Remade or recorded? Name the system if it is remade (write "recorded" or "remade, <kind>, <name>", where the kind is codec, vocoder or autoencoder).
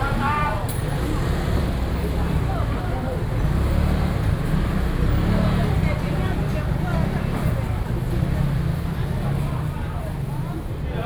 recorded